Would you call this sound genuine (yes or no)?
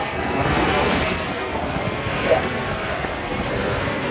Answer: no